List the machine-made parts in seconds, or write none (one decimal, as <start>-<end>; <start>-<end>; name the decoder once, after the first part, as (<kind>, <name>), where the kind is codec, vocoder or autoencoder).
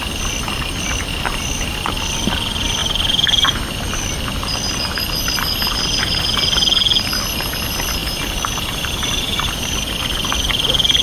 2.8-6.2 (vocoder, BigVGAN v2); 8.0-9.9